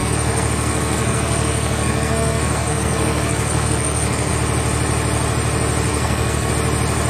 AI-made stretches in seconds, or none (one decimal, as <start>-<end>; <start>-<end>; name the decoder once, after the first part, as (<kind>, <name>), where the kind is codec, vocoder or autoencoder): 0.0-4.3 (codec, SNAC); 5.9-6.5